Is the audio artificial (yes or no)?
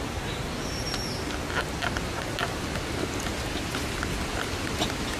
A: no